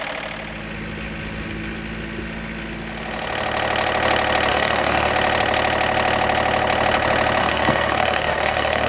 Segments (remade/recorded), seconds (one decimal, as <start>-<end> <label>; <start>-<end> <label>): 0.0-4.5 recorded; 4.5-5.1 remade; 5.1-7.4 recorded; 7.4-8.9 remade